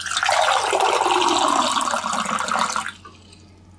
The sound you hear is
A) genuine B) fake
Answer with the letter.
A